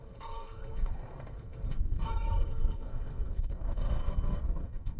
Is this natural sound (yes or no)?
no